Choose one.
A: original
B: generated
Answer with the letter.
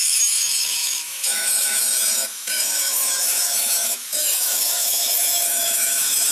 B